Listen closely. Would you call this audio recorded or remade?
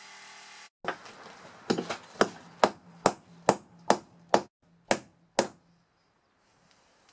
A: recorded